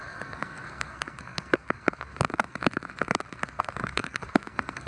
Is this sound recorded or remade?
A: remade